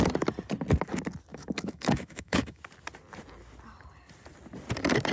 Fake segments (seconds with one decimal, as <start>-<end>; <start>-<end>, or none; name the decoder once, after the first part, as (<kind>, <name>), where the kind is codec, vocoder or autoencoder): 1.3-2.6 (autoencoder, DAC-VAE)